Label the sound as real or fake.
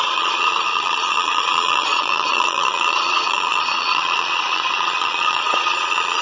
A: fake